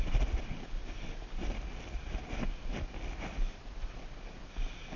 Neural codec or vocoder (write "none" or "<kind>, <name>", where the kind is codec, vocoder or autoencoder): none